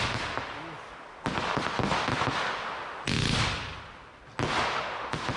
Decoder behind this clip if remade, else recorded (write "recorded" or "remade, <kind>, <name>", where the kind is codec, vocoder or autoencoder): recorded